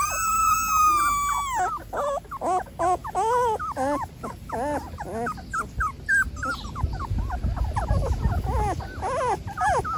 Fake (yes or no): no